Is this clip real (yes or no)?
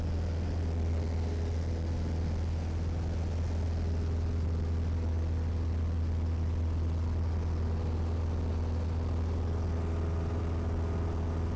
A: yes